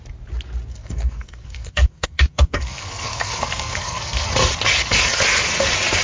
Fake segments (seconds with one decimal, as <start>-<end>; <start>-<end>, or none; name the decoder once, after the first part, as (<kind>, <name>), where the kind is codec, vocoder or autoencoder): 0.7-4.3 (codec, SNAC)